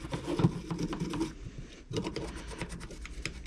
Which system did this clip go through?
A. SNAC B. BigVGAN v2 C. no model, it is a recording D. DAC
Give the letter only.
C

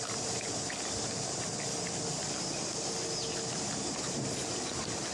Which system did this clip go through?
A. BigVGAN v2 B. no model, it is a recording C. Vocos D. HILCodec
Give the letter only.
B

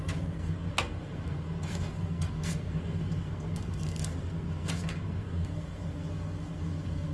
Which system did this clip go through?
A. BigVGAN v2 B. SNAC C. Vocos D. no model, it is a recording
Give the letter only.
B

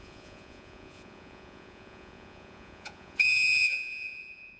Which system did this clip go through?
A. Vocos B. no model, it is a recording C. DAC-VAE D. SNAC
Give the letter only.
A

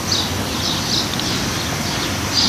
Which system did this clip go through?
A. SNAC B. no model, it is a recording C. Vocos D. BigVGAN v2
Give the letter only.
B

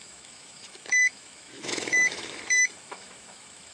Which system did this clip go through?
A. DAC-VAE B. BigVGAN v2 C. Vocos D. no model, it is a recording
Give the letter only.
A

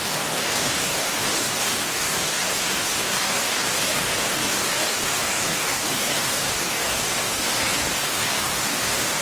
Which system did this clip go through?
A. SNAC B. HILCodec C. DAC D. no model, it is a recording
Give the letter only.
C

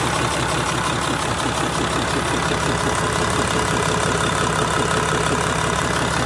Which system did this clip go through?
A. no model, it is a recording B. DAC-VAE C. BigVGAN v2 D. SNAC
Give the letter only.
A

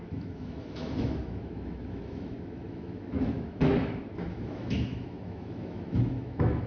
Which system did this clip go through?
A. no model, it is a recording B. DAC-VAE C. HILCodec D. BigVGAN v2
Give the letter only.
B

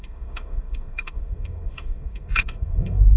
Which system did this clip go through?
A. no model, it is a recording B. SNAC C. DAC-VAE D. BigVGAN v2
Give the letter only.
C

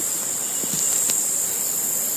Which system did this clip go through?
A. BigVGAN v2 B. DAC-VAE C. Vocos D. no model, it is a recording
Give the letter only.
D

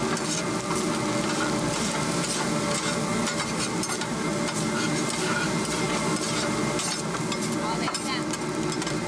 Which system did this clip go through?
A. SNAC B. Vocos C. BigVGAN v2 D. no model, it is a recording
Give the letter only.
D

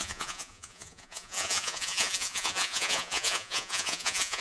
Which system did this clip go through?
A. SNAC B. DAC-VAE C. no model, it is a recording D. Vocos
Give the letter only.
D